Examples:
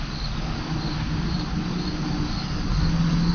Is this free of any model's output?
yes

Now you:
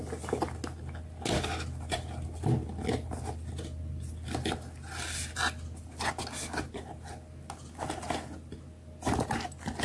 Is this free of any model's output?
yes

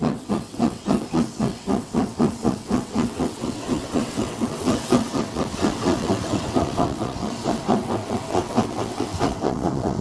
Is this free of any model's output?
no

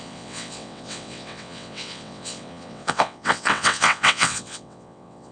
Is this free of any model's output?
no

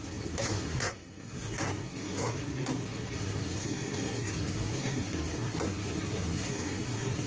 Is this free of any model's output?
no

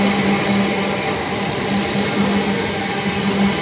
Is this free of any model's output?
yes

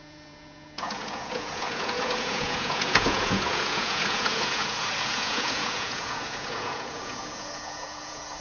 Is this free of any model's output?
no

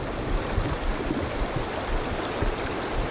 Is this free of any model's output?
yes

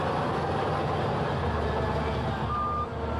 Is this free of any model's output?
yes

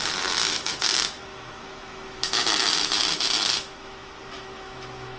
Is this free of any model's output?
no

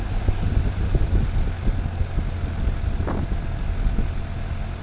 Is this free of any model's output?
yes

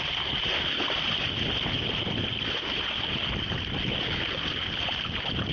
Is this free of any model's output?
yes